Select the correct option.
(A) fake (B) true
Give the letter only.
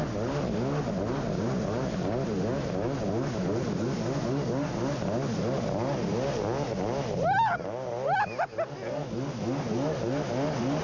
B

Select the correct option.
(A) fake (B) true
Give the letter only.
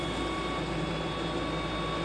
B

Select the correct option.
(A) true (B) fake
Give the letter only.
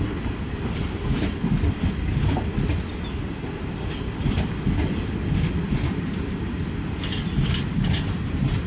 A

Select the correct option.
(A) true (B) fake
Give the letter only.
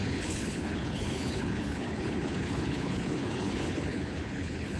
B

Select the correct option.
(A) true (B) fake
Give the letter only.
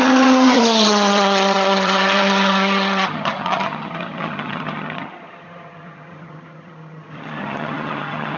B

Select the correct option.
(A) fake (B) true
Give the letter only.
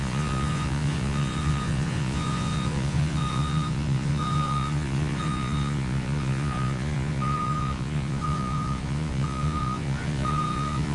A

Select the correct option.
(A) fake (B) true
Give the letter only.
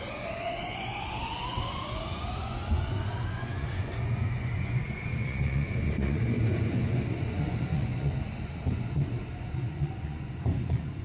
A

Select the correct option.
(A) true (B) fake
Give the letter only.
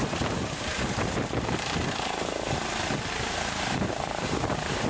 B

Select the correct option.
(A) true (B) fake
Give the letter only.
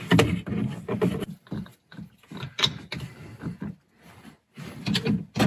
A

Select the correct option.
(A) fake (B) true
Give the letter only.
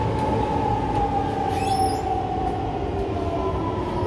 B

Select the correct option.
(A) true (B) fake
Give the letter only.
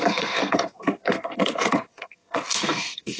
B